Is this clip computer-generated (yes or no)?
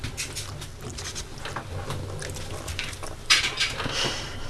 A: no